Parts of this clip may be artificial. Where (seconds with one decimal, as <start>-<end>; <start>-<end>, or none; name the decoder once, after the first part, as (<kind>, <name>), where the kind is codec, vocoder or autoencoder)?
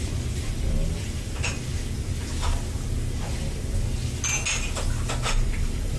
0.0-1.7 (vocoder, BigVGAN v2); 5.3-6.0